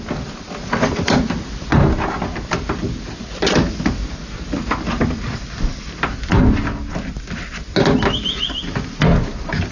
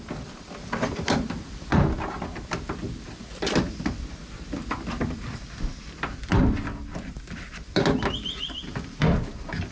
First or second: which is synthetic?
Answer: second